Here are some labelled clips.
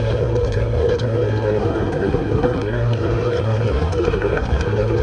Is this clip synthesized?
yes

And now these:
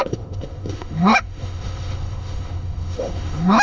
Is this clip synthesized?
yes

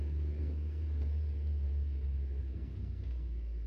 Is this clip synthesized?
yes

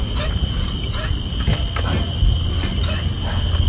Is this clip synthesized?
no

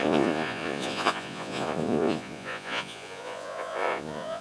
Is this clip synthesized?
yes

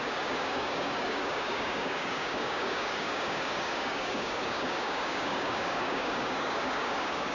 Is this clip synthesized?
yes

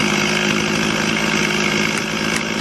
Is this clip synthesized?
no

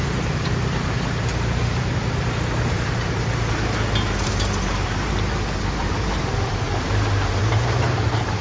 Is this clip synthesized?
yes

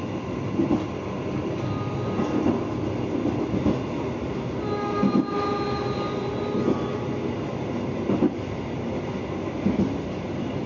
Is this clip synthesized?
no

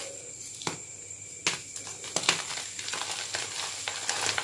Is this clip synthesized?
no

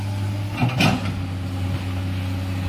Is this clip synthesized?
no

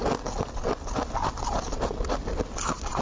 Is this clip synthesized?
no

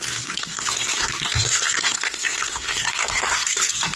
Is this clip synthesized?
yes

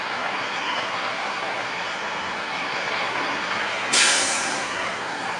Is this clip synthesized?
yes